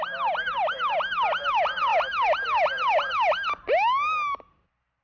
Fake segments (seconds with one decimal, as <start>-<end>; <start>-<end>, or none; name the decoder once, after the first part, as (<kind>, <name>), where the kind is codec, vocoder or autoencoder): none